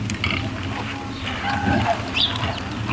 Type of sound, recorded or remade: recorded